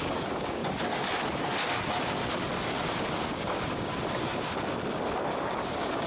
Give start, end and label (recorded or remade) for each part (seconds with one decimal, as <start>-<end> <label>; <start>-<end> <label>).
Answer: 0.0-0.6 remade; 0.6-3.3 recorded; 3.3-3.9 remade; 3.9-5.3 recorded; 5.3-6.1 remade